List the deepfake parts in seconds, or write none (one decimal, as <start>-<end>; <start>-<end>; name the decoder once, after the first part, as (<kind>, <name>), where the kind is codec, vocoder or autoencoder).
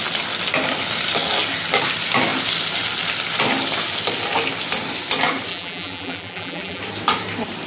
5.5-6.8 (vocoder, BigVGAN v2)